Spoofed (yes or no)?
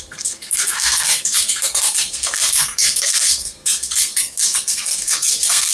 yes